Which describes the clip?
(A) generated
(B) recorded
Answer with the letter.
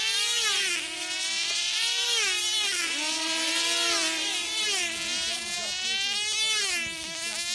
B